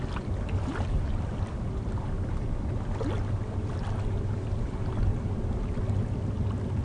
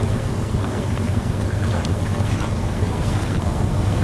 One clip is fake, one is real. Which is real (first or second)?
first